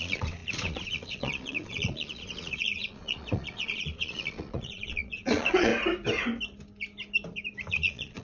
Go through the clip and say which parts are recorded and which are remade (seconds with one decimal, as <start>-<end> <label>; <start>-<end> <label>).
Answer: 0.0-5.7 remade; 5.7-7.7 recorded; 7.7-8.2 remade